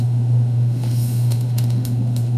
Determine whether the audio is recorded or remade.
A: remade